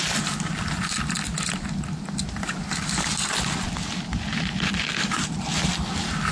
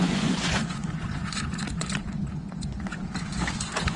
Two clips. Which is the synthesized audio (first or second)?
second